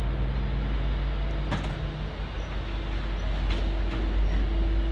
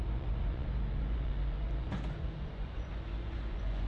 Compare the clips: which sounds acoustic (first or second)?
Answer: first